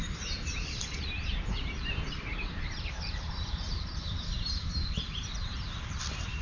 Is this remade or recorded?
remade